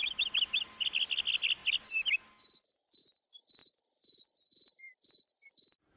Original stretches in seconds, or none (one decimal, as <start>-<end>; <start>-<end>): 0.0-6.0